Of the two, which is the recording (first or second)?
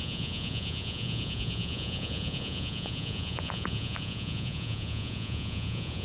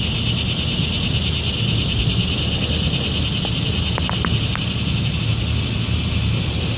second